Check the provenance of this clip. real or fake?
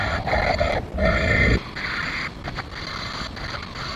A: real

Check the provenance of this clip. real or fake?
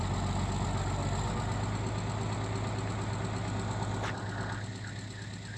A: real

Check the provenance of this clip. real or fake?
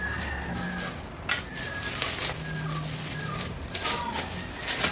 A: real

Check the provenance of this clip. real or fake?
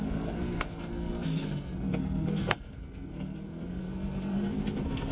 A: fake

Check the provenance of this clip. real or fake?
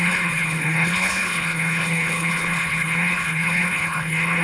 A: fake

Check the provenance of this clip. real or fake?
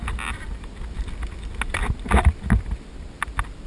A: real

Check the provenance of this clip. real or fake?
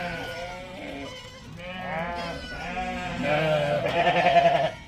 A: real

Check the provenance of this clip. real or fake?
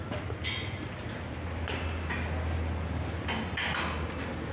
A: real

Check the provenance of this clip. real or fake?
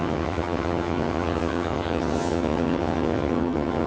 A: fake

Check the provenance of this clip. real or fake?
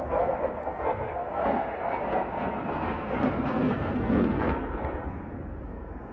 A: fake